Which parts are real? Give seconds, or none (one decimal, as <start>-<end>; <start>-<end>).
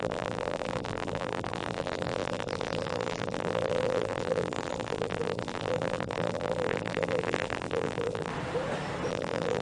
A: 8.3-9.1